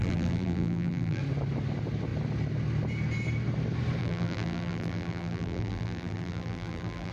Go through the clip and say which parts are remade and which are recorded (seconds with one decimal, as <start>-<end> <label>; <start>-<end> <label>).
0.0-1.2 remade; 1.2-4.0 recorded; 4.0-7.1 remade